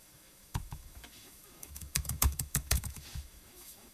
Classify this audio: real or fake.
fake